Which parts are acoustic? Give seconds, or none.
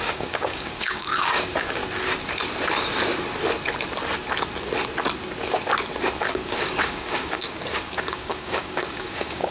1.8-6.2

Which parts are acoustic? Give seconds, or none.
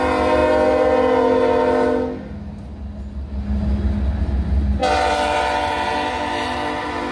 0.0-7.1